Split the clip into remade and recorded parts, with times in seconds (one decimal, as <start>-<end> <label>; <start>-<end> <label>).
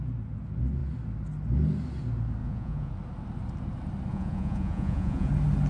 0.0-2.4 recorded; 2.4-2.9 remade; 2.9-4.1 recorded; 4.1-5.3 remade; 5.3-5.7 recorded